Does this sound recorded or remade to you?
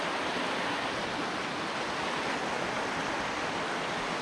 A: recorded